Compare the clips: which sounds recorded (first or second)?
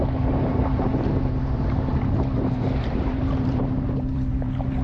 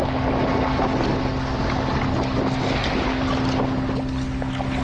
second